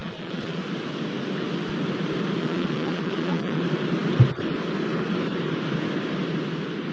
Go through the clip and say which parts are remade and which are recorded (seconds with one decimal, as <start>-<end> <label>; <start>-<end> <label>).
0.0-0.6 remade; 0.6-2.4 recorded; 2.4-3.6 remade; 3.6-6.9 recorded